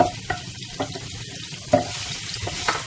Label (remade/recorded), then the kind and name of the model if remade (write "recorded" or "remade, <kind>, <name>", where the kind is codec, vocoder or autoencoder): recorded